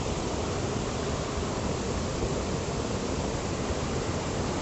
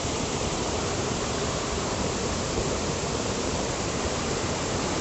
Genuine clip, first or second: first